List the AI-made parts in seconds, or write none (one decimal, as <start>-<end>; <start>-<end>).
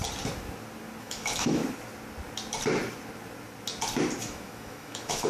1.0-1.6; 4.2-5.3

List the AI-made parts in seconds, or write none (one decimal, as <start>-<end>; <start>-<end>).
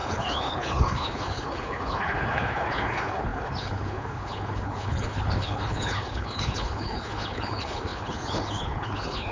0.0-9.3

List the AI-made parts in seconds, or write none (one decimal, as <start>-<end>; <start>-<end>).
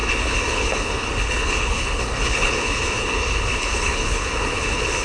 0.0-5.0